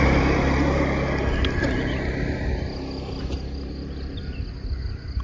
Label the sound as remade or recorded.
recorded